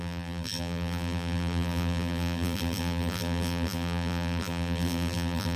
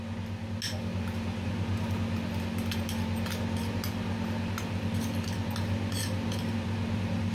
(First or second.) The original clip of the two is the second